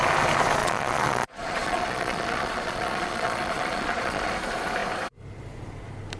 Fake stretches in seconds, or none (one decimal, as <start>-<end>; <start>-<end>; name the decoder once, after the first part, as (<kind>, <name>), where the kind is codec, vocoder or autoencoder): 0.6-4.3 (vocoder, Vocos)